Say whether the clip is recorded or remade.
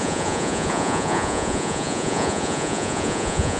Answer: remade